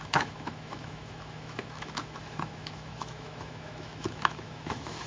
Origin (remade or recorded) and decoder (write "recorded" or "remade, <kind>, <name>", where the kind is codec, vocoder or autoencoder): remade, autoencoder, DAC-VAE